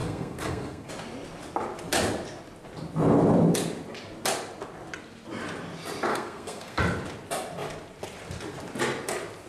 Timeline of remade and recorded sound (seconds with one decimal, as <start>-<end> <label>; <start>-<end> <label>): 0.0-0.9 remade; 0.9-6.1 recorded; 6.1-6.8 remade; 6.8-9.5 recorded